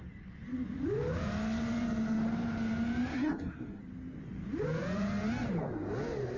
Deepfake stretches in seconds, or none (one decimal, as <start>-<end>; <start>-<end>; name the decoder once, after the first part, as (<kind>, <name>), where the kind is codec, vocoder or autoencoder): 3.1-3.8 (codec, SNAC)